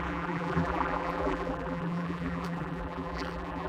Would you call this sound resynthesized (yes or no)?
yes